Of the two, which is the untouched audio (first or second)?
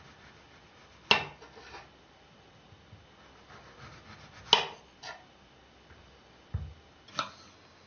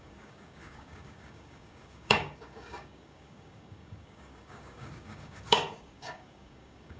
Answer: first